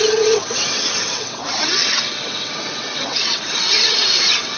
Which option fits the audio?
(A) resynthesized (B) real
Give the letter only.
A